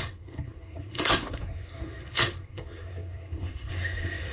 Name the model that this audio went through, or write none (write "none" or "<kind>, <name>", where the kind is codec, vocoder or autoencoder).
codec, SNAC